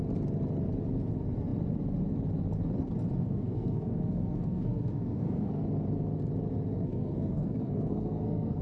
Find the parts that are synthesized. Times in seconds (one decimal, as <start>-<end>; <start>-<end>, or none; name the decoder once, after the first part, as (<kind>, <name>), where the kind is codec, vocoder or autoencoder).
3.2-5.6 (codec, SNAC); 6.7-8.6